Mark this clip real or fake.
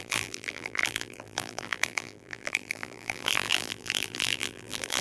fake